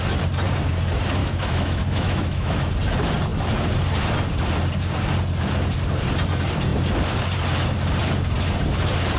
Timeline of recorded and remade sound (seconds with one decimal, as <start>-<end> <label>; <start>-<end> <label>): 0.0-1.2 recorded; 1.2-2.7 remade; 2.7-9.2 recorded